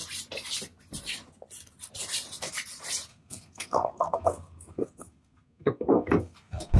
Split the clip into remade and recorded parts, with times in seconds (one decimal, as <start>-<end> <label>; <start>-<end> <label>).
0.0-3.1 recorded; 3.1-6.8 remade